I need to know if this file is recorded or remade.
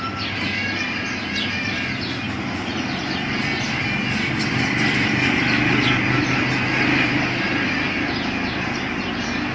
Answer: recorded